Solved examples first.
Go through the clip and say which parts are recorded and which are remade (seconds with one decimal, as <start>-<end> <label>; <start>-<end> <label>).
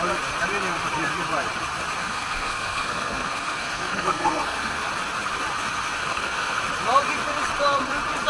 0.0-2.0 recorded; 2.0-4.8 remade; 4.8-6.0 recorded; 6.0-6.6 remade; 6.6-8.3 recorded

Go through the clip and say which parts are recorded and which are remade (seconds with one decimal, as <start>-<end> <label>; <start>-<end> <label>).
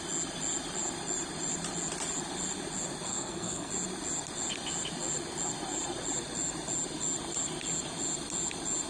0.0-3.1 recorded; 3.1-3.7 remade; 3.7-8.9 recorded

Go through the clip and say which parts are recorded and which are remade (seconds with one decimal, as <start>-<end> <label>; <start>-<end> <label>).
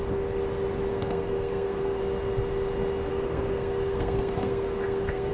0.0-0.9 recorded; 0.9-2.0 remade; 2.0-3.1 recorded; 3.1-5.3 remade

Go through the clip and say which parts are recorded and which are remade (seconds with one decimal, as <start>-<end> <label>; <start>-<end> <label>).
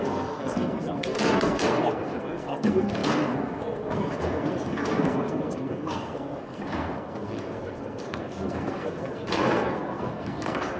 0.0-10.8 remade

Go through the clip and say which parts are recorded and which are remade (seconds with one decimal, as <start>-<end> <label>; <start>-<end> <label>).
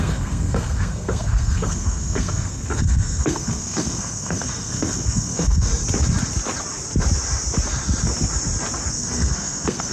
0.0-5.7 remade; 5.7-8.9 recorded; 8.9-9.9 remade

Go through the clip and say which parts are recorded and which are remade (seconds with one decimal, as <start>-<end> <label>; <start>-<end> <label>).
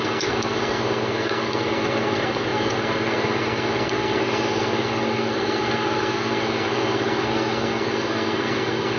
0.0-9.0 remade